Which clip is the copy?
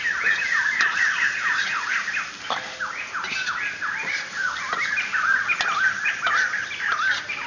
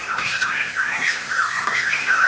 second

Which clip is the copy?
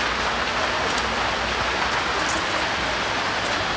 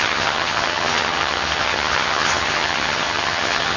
second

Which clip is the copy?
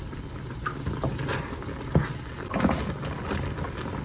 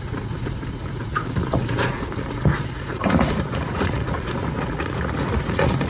second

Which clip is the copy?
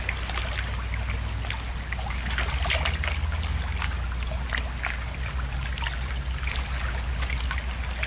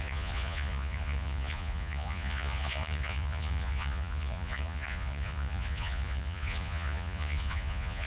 second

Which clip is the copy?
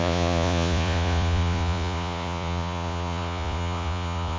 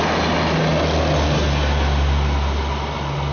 first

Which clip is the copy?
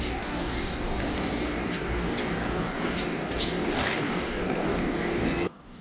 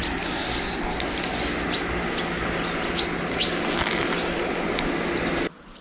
first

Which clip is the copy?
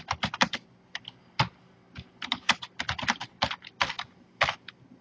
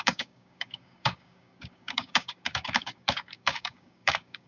second